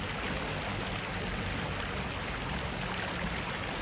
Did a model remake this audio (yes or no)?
no